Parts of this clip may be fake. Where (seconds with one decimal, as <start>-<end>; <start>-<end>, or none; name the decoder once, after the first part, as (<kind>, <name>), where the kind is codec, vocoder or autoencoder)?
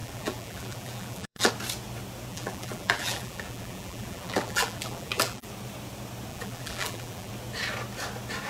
0.0-1.5 (vocoder, BigVGAN v2); 2.3-5.5; 6.3-7.3